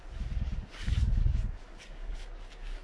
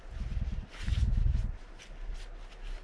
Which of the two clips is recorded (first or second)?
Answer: second